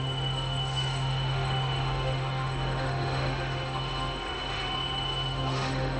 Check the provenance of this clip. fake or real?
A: fake